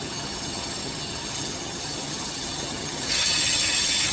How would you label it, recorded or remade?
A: remade